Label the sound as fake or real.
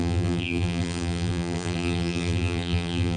fake